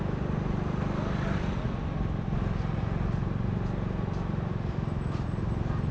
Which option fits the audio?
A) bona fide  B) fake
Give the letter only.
A